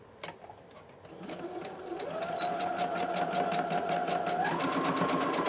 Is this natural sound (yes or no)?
yes